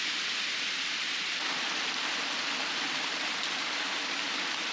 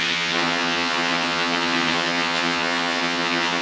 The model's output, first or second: second